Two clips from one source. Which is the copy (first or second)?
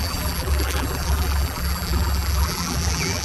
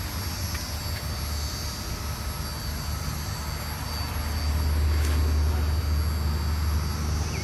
first